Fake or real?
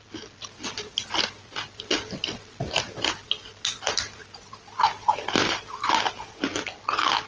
real